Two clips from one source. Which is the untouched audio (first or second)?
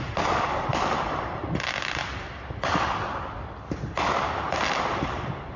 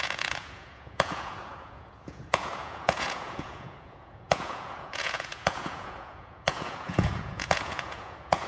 first